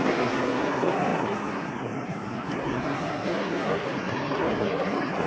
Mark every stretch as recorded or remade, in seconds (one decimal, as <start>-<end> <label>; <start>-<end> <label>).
0.0-5.3 remade